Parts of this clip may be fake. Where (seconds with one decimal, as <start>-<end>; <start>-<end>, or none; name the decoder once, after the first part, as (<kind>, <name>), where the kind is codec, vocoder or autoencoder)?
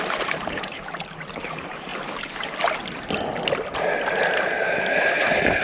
0.0-0.8 (vocoder, BigVGAN v2); 1.5-1.9